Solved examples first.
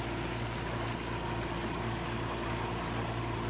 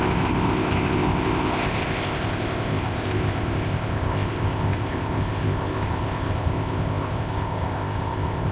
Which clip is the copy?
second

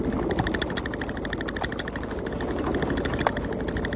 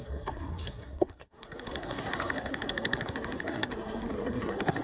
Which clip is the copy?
second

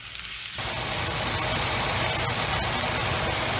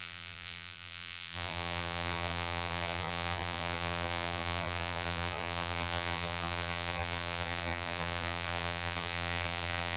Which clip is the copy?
second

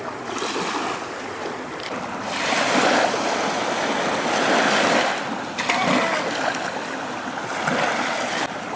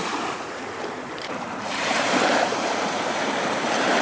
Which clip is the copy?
second